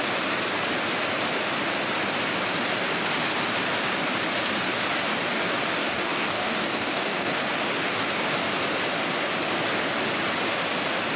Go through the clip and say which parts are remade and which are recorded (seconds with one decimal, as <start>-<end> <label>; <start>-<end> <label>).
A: 0.0-5.8 recorded; 5.8-7.3 remade; 7.3-11.2 recorded

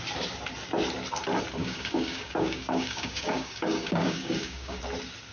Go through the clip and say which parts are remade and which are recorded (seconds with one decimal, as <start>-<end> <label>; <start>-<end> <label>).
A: 0.0-1.6 recorded; 1.6-4.8 remade; 4.8-5.3 recorded

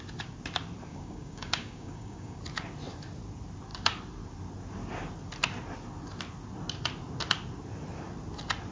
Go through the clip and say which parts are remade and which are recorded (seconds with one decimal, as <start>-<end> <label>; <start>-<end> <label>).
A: 0.0-0.9 recorded; 0.9-2.4 remade; 2.4-8.7 recorded

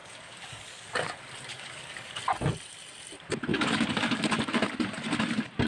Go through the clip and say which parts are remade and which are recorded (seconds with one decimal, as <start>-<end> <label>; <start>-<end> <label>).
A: 0.0-1.1 remade; 1.1-1.5 recorded; 1.5-2.2 remade; 2.2-3.5 recorded; 3.5-4.2 remade; 4.2-5.7 recorded

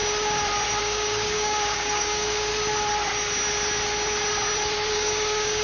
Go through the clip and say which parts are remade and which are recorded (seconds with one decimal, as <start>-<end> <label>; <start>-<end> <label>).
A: 0.0-0.8 recorded; 0.8-2.5 remade; 2.5-4.9 recorded; 4.9-5.6 remade

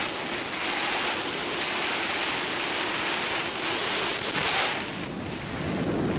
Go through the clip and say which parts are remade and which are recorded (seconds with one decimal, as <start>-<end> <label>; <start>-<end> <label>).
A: 0.0-6.2 recorded